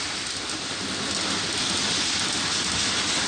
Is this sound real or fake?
real